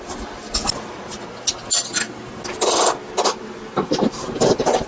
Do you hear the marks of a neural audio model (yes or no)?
no